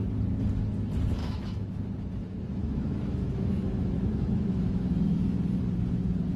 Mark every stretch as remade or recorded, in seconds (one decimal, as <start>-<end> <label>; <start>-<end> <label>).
0.0-1.2 recorded; 1.2-1.8 remade; 1.8-2.6 recorded; 2.6-4.8 remade; 4.8-6.4 recorded